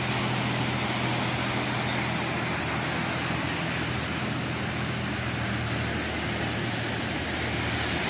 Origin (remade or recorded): recorded